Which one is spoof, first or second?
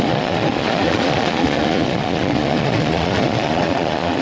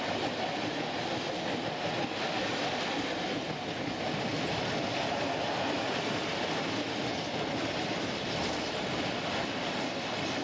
first